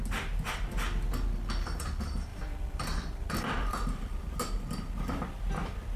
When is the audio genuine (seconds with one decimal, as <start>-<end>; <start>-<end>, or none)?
0.0-2.3; 3.4-6.0